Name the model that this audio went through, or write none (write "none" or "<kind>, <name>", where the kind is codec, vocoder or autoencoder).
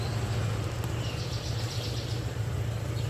vocoder, BigVGAN v2